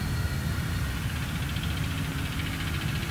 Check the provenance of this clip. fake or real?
real